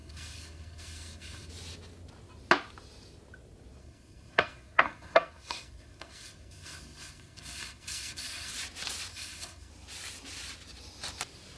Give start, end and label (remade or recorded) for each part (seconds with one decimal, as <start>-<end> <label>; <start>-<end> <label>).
0.0-1.5 remade; 1.5-3.8 recorded; 3.8-8.5 remade; 8.5-9.1 recorded; 9.1-9.7 remade; 9.7-11.6 recorded